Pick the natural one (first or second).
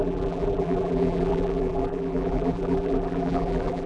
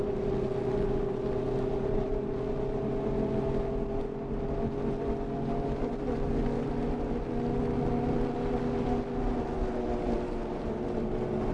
second